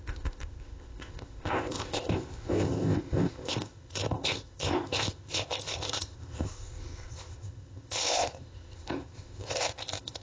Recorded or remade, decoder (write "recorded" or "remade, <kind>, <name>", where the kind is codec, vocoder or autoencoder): remade, codec, ZipCodec